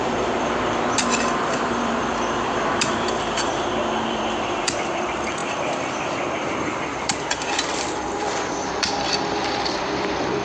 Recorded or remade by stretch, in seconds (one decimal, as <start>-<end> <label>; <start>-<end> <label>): 0.0-10.4 remade